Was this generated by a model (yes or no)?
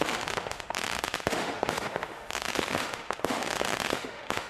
yes